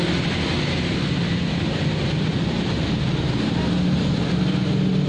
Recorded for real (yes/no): yes